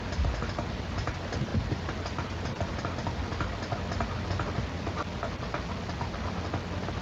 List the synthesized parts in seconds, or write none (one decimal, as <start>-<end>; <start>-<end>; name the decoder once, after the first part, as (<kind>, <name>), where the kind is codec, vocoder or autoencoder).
none